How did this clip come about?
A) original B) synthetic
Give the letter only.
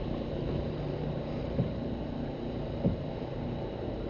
B